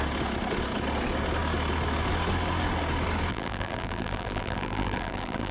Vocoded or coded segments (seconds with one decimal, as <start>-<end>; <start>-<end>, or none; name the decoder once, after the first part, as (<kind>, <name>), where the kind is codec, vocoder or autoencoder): 3.3-5.5 (vocoder, BigVGAN v2)